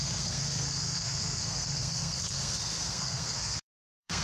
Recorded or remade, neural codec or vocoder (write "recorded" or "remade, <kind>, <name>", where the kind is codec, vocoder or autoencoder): remade, codec, SNAC